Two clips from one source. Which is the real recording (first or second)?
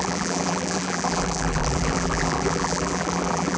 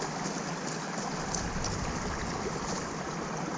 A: second